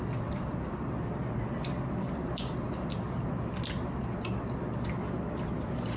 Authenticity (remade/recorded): recorded